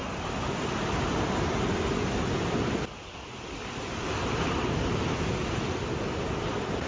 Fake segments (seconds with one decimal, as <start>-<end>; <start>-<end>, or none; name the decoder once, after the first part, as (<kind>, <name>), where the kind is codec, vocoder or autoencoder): none